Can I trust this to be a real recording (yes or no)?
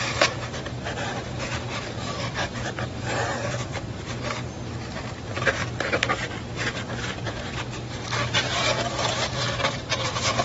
no